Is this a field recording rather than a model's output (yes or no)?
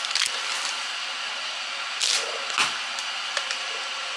yes